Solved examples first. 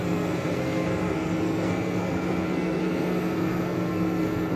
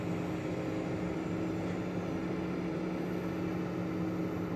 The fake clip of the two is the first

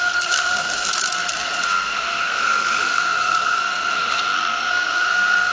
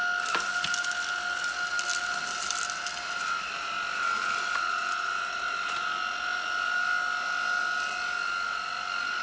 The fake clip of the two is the first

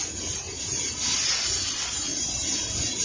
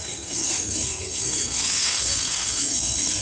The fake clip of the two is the second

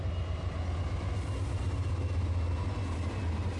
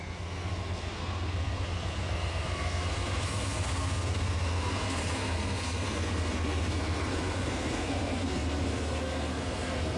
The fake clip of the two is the second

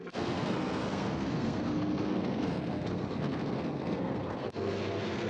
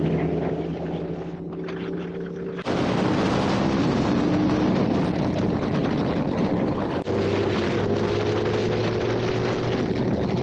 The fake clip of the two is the first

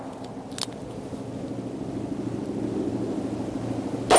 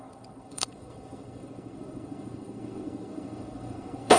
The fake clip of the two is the second